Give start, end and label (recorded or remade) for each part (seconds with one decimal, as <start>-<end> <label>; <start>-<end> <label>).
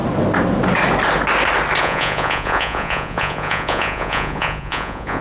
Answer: 0.0-1.8 recorded; 1.8-5.2 remade